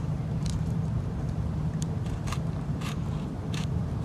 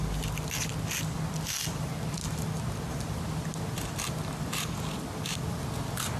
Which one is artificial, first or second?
first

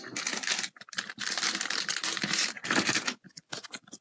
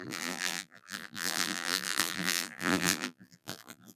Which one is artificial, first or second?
second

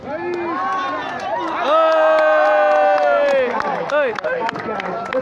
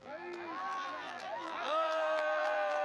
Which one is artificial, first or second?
second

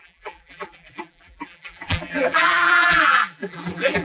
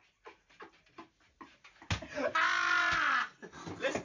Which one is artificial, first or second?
first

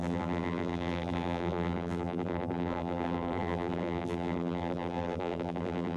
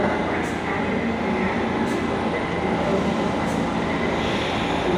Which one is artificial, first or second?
first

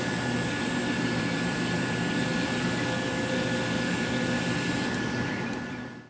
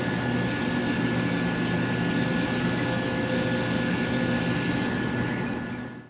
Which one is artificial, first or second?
first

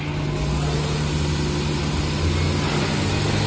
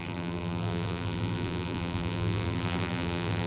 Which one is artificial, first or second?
second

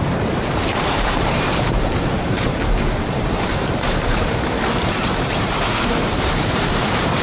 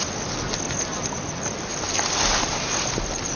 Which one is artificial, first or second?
first